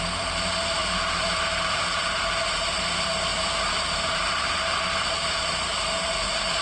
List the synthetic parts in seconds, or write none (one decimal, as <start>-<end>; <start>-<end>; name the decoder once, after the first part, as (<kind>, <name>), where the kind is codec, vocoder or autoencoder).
0.0-6.6 (vocoder, BigVGAN v2)